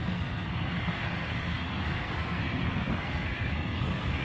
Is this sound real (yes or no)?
no